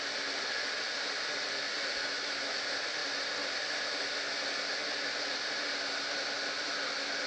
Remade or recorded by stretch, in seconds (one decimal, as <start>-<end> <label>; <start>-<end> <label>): 0.0-2.0 recorded; 2.0-2.6 remade; 2.6-7.3 recorded